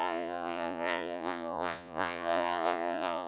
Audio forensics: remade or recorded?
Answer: remade